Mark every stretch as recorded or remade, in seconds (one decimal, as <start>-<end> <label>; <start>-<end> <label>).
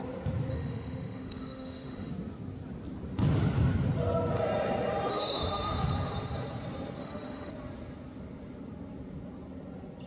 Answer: 0.0-0.5 recorded; 0.5-2.1 remade; 2.1-5.1 recorded; 5.1-5.9 remade; 5.9-7.0 recorded; 7.0-7.5 remade; 7.5-10.1 recorded